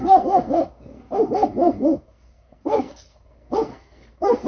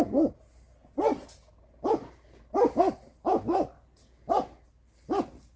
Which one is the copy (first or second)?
first